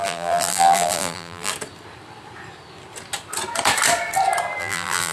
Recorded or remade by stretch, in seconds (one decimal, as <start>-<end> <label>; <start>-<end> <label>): 0.0-1.5 remade; 1.5-4.6 recorded; 4.6-5.1 remade